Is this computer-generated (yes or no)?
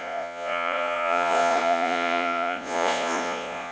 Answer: yes